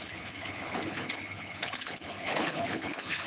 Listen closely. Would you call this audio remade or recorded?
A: remade